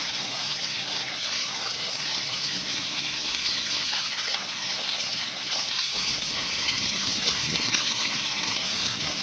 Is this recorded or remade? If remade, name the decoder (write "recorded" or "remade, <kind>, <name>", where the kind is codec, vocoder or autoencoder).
remade, codec, SNAC